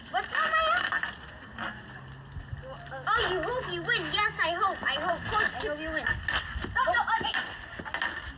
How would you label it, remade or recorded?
recorded